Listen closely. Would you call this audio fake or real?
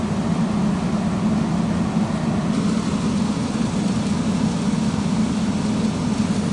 real